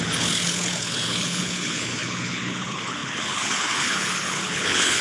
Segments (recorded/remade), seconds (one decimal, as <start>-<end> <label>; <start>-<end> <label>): 0.0-5.0 remade